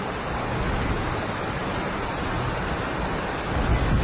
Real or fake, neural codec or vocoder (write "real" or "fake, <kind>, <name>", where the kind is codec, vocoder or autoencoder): real